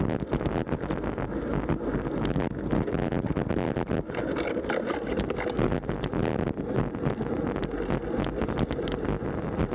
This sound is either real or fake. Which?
real